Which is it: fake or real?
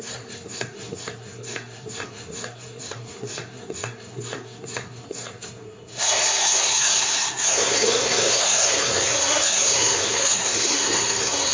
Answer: fake